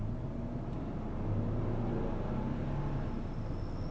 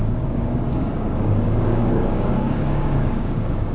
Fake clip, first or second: second